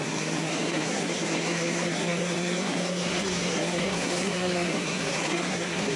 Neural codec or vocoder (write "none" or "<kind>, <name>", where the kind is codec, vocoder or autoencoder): codec, SNAC